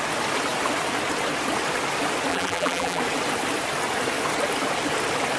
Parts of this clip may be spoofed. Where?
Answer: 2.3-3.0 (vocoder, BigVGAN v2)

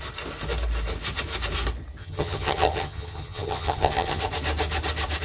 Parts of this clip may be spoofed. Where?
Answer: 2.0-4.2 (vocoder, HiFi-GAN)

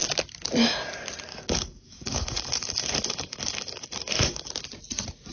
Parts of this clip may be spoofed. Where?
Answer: 1.3-4.5 (codec, DAC)